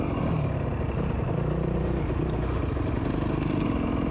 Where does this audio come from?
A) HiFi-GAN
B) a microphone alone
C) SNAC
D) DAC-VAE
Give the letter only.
B